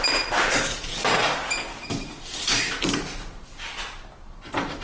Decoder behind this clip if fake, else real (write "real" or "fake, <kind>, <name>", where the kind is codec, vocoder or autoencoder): real